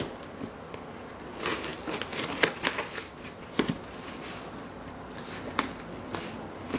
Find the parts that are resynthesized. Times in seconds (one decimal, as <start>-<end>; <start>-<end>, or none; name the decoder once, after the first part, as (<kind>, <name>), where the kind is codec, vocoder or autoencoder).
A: none